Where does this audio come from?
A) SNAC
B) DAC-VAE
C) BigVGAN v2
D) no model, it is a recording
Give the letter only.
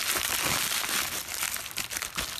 D